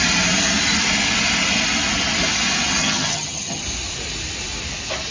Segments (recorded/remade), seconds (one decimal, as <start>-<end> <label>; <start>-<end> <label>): 0.0-2.8 recorded; 2.8-3.6 remade; 3.6-5.1 recorded